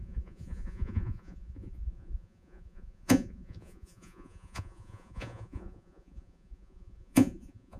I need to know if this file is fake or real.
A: fake